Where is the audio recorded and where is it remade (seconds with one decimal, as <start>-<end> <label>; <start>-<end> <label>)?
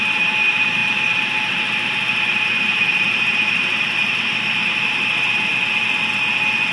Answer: 0.0-5.5 remade; 5.5-6.7 recorded